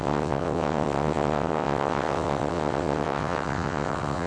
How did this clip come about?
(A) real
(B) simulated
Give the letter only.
B